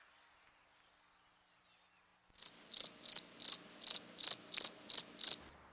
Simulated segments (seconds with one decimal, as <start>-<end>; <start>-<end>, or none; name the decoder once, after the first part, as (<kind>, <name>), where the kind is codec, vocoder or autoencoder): none